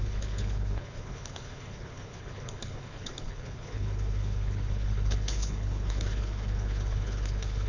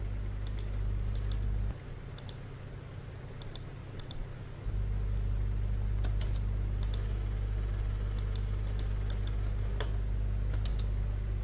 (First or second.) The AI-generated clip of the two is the first